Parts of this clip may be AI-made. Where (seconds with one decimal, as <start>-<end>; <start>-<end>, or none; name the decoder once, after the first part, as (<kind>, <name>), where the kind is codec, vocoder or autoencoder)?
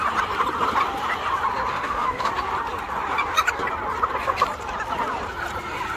1.7-2.3 (autoencoder, DAC-VAE)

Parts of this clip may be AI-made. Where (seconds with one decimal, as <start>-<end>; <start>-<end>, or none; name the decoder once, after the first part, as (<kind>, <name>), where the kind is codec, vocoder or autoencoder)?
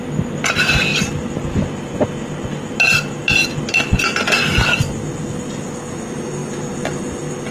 0.9-1.9 (vocoder, BigVGAN v2)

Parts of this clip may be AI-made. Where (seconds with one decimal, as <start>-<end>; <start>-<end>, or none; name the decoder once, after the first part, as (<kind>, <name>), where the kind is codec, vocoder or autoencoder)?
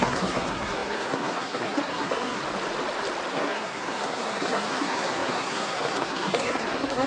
0.0-2.4 (codec, SNAC); 3.3-7.1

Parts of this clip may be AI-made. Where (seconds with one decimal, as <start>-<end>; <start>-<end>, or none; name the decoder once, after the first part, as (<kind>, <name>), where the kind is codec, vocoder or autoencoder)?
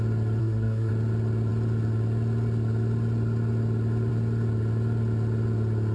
0.4-0.9 (codec, SNAC)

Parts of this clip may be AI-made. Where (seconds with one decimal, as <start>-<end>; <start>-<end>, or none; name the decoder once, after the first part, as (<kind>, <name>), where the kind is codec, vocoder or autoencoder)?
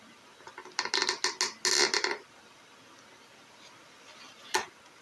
none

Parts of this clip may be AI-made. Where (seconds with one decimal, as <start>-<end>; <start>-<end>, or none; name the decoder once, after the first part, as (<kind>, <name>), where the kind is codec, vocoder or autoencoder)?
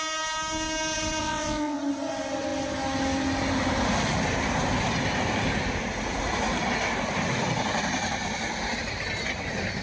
1.2-1.8 (vocoder, WaveNeXt)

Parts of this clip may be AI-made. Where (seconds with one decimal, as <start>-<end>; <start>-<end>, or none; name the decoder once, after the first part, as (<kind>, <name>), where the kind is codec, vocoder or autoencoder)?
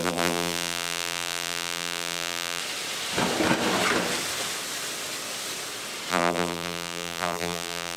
0.0-2.6 (vocoder, BigVGAN v2); 6.1-8.0